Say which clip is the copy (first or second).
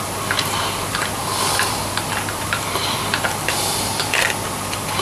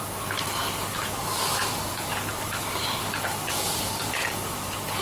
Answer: second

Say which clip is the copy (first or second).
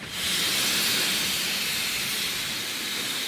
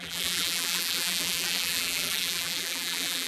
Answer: second